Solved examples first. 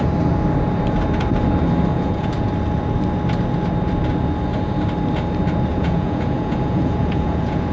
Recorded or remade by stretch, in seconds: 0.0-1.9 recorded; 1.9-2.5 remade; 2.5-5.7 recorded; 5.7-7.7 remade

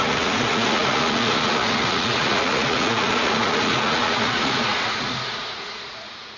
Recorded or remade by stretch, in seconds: 0.0-6.4 remade